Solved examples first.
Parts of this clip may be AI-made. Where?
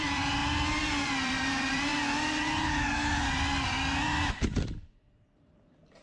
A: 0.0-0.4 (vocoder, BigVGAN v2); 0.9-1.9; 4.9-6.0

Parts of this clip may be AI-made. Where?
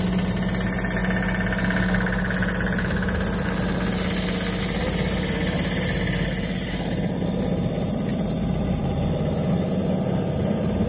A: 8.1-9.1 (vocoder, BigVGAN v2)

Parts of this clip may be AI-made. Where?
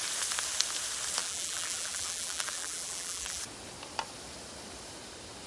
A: 1.2-3.4 (vocoder, BigVGAN v2)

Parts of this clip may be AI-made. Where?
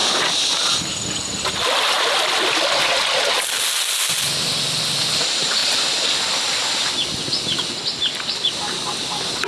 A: 1.6-2.4 (vocoder, BigVGAN v2); 5.6-6.8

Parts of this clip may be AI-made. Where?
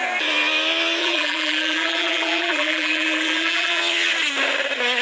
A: 1.0-3.8 (vocoder, BigVGAN v2)